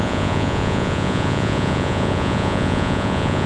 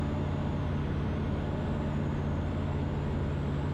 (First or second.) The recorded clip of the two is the second